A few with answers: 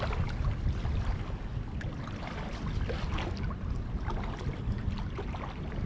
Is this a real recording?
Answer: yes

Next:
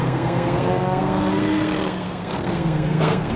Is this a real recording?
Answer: no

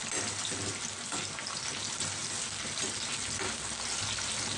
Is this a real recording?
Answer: yes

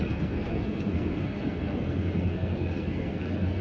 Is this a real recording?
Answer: no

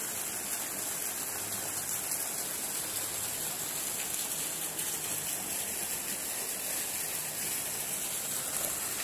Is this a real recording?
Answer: yes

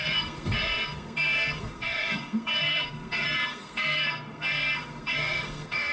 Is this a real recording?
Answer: no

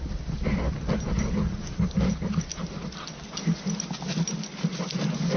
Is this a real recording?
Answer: yes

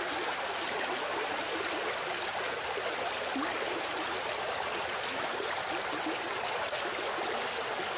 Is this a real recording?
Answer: yes